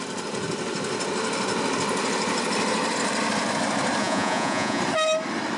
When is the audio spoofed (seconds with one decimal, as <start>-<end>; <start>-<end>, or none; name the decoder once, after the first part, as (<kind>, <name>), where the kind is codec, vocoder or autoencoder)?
4.0-4.8 (vocoder, Vocos)